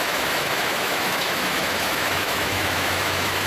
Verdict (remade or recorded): remade